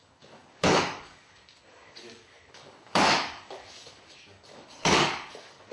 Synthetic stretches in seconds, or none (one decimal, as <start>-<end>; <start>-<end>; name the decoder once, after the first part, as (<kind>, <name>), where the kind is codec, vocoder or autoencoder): 0.0-5.7 (codec, DAC)